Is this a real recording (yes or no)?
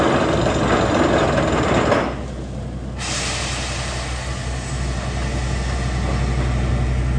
yes